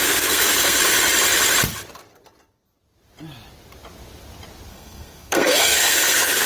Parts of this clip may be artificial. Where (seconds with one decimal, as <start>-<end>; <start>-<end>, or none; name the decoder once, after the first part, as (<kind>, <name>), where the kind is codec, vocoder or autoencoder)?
0.0-0.8 (codec, SNAC); 4.7-6.5